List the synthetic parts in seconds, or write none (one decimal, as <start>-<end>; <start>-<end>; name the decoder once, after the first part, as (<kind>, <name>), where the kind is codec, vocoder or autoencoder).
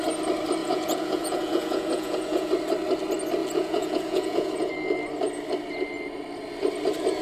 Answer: 0.6-2.5 (vocoder, Vocos); 3.4-4.7